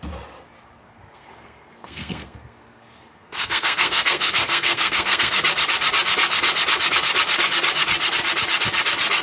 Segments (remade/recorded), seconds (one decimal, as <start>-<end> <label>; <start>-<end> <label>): 0.0-0.8 recorded; 0.8-5.3 remade; 5.3-9.2 recorded